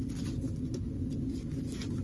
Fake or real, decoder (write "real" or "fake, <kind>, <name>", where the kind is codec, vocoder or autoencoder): real